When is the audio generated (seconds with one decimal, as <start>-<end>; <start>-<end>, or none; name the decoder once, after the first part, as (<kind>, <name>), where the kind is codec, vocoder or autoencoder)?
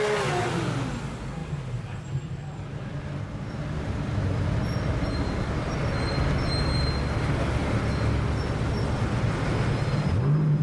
none